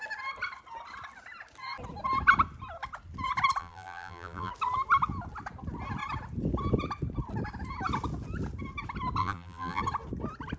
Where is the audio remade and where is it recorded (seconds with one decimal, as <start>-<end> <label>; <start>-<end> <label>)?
0.0-3.6 recorded; 3.6-4.5 remade; 4.5-9.2 recorded; 9.2-9.8 remade; 9.8-10.6 recorded